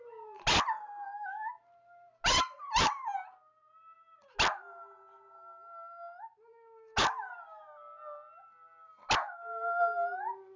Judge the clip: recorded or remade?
recorded